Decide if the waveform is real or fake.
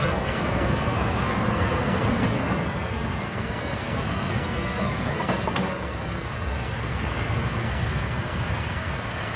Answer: fake